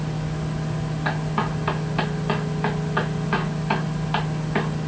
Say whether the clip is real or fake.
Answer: real